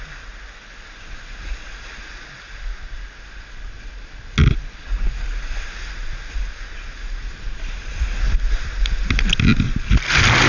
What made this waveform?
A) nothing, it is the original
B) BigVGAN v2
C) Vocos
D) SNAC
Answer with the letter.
A